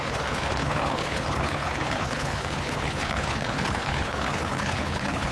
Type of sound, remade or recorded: remade